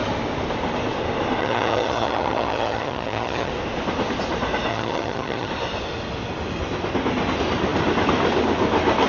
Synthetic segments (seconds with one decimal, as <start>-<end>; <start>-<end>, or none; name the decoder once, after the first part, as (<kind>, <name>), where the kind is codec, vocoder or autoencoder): 1.4-3.5 (vocoder, HiFi-GAN); 4.7-5.5